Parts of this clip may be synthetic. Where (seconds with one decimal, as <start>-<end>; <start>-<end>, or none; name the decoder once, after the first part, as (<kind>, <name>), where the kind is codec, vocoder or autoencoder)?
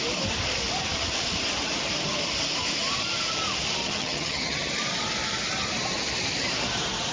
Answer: 3.8-4.7 (vocoder, HiFi-GAN)